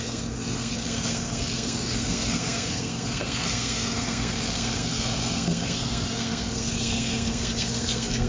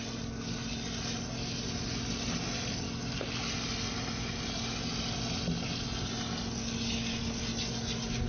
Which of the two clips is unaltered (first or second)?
second